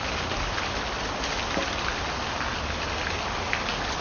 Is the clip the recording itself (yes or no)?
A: yes